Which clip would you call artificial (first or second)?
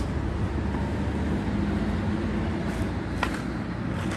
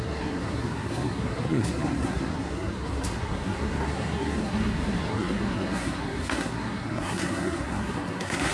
second